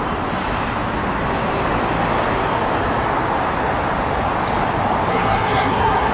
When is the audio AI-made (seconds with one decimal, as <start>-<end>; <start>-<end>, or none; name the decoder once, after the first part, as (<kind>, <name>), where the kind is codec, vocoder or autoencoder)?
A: 5.1-6.1 (codec, SNAC)